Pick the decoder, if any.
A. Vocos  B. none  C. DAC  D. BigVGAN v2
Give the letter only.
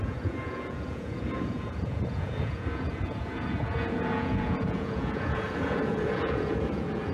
A